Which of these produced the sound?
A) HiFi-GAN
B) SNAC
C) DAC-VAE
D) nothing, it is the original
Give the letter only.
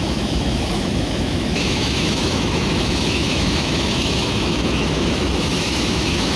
C